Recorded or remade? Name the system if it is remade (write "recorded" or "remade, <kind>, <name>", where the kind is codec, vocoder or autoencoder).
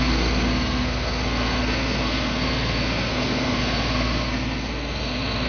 remade, codec, SNAC